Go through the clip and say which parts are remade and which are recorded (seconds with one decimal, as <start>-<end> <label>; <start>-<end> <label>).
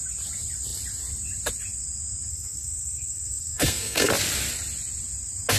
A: 0.0-2.3 recorded; 2.3-4.1 remade; 4.1-5.6 recorded